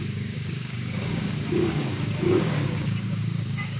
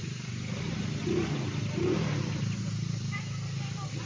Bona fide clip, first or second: second